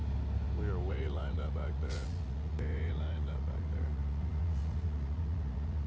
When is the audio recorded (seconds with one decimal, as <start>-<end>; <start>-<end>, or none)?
0.0-0.9

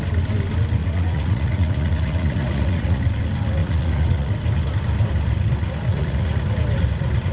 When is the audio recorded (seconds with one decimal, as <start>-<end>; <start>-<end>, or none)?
0.0-0.8; 3.0-3.6; 4.3-5.9; 6.4-7.3

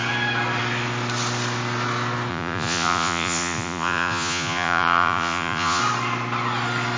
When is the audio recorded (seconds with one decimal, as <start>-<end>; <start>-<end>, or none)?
0.0-2.3; 5.8-7.0